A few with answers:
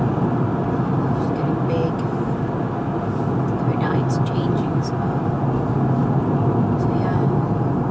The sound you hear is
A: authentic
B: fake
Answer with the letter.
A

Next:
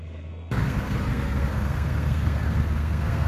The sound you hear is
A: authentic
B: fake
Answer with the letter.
B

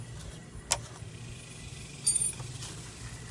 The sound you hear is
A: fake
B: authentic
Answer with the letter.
B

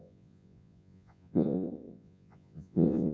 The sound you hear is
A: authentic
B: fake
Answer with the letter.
B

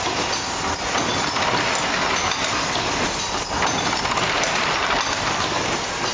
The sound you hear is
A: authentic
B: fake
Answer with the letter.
A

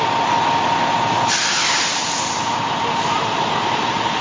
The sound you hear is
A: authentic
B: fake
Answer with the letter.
A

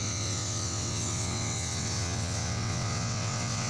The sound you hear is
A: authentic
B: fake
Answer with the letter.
B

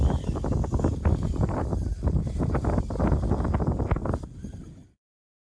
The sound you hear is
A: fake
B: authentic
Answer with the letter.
B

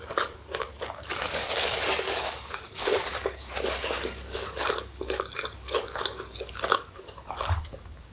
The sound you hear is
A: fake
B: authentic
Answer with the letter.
A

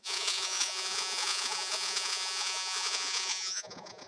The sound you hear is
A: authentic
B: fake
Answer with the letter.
B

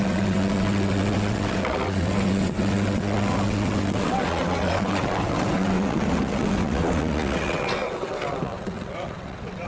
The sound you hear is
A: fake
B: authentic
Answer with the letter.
A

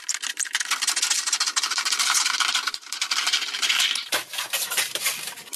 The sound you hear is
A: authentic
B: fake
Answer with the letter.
A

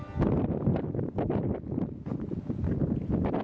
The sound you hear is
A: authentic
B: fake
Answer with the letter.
A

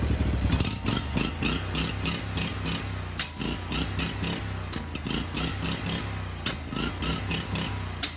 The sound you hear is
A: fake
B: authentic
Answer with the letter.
B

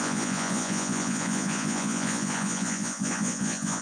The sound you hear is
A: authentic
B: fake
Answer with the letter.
B